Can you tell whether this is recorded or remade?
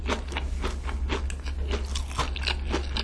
recorded